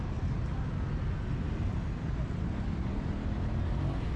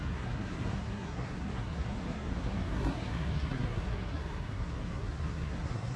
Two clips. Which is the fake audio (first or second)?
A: second